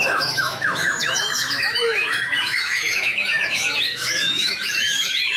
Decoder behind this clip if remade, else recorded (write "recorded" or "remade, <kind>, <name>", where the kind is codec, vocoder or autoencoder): remade, autoencoder, DAC-VAE